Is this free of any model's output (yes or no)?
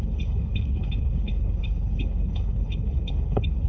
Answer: no